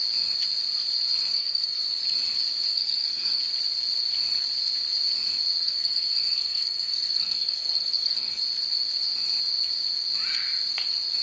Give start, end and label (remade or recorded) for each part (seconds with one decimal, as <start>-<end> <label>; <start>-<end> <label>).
0.0-1.3 recorded; 1.3-1.8 remade; 1.8-2.7 recorded; 2.7-3.4 remade; 3.4-5.6 recorded; 5.6-8.4 remade; 8.4-11.2 recorded